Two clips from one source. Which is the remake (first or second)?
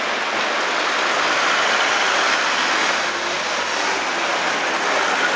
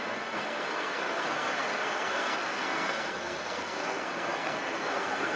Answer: second